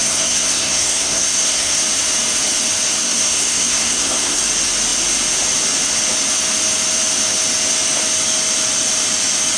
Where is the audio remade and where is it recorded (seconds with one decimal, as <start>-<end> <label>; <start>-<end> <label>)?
0.0-1.8 remade; 1.8-3.0 recorded; 3.0-4.4 remade; 4.4-9.6 recorded